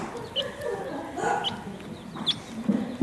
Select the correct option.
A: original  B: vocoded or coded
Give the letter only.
A